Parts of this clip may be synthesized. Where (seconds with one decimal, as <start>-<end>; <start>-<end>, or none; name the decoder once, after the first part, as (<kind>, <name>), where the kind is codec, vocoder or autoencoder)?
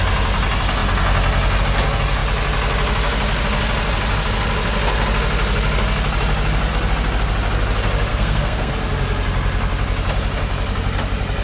8.1-8.7 (codec, SNAC)